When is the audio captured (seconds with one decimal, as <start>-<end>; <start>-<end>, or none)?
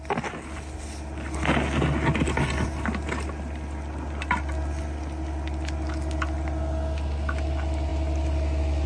0.0-8.9